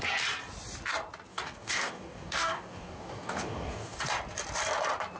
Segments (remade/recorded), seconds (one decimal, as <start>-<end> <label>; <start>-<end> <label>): 0.0-1.3 recorded; 1.3-4.0 remade; 4.0-5.2 recorded